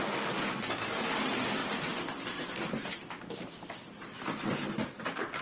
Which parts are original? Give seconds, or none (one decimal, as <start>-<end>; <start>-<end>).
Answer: 0.0-5.4